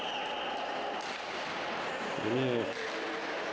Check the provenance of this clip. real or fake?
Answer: real